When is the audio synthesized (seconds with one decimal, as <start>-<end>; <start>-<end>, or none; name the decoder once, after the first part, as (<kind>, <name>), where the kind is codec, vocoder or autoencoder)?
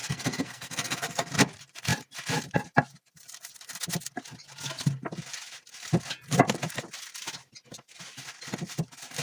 0.0-1.3 (codec, SNAC)